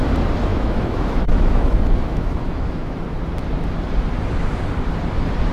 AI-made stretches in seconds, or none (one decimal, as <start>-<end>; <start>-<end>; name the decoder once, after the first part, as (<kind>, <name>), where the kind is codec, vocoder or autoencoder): 0.5-3.0 (autoencoder, DAC-VAE)